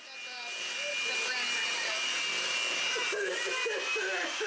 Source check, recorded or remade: recorded